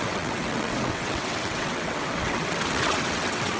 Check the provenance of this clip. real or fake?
fake